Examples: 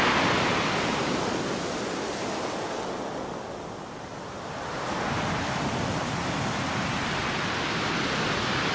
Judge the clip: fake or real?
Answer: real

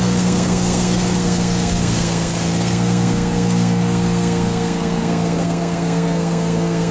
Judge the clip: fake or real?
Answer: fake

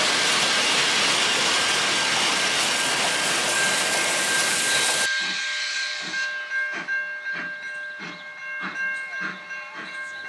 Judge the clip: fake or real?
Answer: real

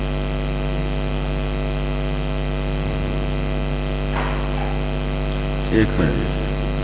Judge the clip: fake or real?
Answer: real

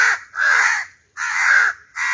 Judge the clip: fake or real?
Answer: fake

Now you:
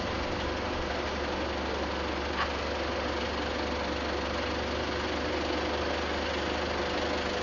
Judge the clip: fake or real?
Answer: real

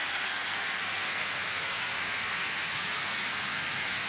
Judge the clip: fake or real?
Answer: fake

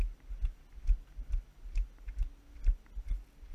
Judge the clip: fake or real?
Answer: real